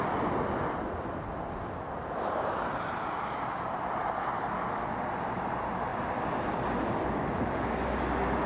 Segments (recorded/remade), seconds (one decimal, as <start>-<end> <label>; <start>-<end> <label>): 0.0-8.5 recorded